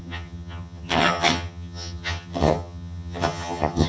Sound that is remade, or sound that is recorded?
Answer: remade